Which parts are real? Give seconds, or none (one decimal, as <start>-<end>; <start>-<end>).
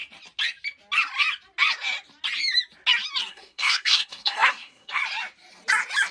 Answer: 0.0-3.3; 5.0-6.1